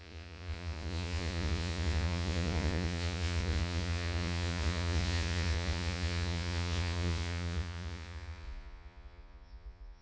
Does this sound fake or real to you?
fake